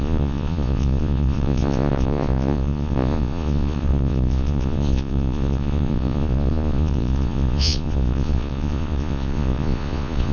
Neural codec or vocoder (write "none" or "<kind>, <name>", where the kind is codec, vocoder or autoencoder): vocoder, Vocos